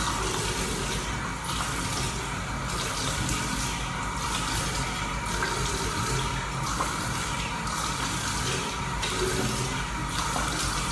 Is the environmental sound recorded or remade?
recorded